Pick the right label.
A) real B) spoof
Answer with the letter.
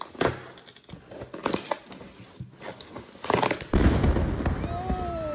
A